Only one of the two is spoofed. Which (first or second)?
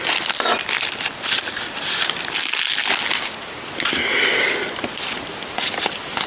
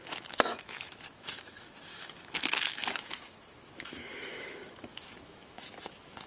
second